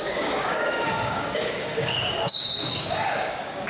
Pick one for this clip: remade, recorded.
remade